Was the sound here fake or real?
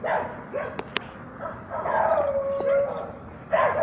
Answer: real